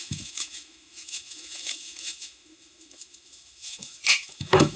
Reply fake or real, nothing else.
fake